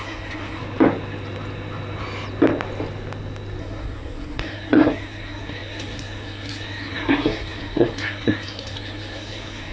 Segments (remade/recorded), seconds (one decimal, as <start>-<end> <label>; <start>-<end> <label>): 0.0-0.6 remade; 0.6-3.6 recorded; 3.6-9.7 remade